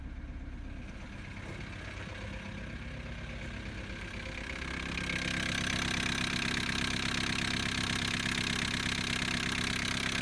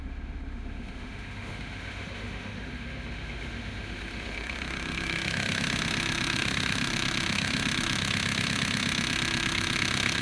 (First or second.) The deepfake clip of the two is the second